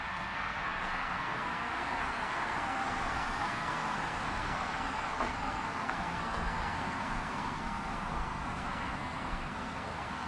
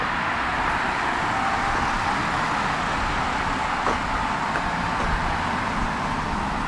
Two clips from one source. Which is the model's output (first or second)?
first